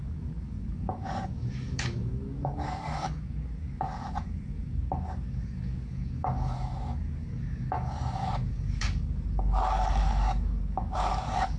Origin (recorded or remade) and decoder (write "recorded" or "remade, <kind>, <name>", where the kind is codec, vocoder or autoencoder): remade, codec, DAC